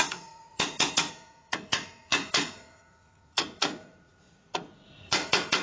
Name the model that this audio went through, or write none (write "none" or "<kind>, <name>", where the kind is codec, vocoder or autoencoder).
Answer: vocoder, Vocos